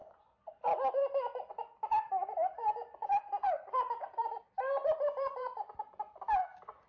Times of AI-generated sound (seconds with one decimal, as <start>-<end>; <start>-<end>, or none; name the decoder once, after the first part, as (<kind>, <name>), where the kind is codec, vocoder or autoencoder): 3.0-6.2 (vocoder, BigVGAN v2)